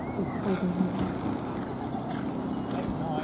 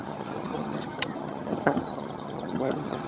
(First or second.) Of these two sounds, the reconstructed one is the second